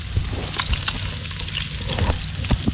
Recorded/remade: recorded